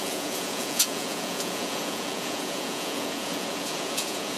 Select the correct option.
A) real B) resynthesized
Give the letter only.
B